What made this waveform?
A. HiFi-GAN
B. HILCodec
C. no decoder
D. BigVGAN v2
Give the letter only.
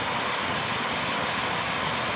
C